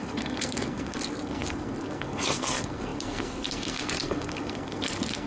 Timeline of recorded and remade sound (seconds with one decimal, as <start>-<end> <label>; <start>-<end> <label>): 0.0-5.3 remade